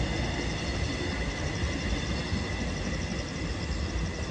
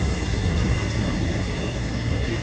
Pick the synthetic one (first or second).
second